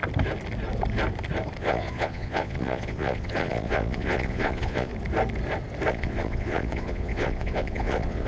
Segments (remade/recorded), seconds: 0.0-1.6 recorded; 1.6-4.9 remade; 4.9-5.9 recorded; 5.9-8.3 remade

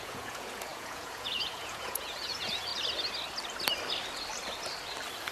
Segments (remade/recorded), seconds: 0.0-2.7 remade; 2.7-5.3 recorded

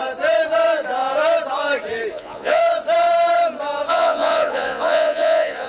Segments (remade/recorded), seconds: 0.0-2.1 recorded; 2.1-2.6 remade; 2.6-3.9 recorded; 3.9-5.7 remade

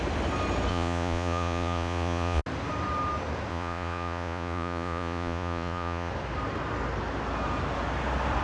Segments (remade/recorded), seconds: 0.0-0.7 recorded; 0.7-2.4 remade; 2.4-3.5 recorded; 3.5-6.1 remade; 6.1-8.4 recorded